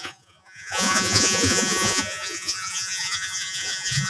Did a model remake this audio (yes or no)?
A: yes